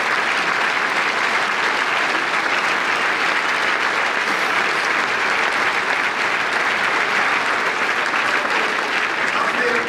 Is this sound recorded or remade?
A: recorded